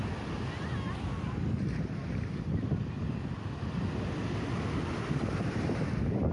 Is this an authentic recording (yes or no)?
yes